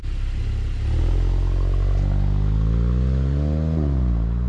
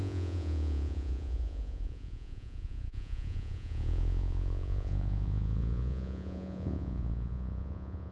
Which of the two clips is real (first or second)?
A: first